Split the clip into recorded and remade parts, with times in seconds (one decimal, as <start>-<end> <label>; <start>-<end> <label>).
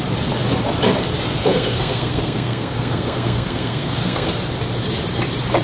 0.0-1.4 recorded; 1.4-4.3 remade; 4.3-5.6 recorded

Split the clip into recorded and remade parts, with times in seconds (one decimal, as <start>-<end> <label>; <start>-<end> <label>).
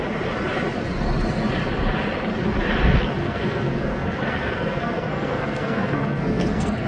0.0-3.2 recorded; 3.2-6.9 remade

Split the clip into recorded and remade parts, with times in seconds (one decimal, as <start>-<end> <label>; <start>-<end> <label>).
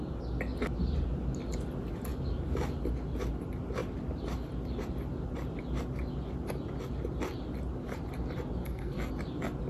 0.0-8.6 recorded; 8.6-9.1 remade; 9.1-9.7 recorded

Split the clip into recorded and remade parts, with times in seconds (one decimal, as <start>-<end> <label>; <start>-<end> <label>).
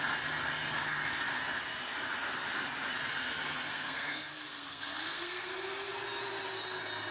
0.0-3.7 recorded; 3.7-5.6 remade; 5.6-7.1 recorded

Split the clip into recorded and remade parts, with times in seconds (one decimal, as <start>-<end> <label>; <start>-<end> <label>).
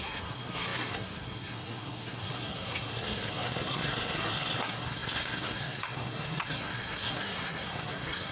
0.0-8.3 remade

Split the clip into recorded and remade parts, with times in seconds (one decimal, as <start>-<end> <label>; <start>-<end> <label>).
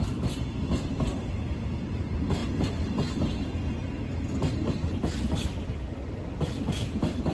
0.0-7.3 recorded